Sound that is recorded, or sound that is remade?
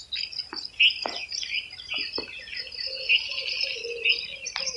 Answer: recorded